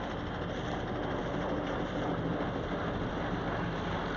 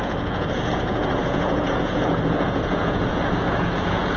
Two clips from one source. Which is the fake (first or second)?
second